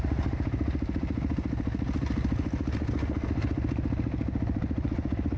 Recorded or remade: recorded